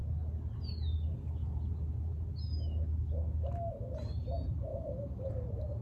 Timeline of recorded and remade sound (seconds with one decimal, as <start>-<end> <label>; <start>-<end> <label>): 0.0-4.7 recorded; 4.7-5.3 remade; 5.3-5.8 recorded